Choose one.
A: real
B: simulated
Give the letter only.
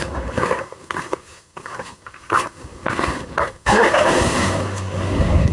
B